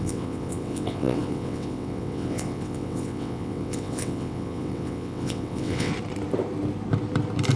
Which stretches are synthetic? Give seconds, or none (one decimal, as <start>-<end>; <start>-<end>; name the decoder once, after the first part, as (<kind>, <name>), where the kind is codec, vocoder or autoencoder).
0.0-5.9 (vocoder, WaveNeXt)